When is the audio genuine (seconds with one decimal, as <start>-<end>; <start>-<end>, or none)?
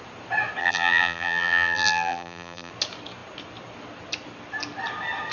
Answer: 0.0-0.6; 2.7-5.3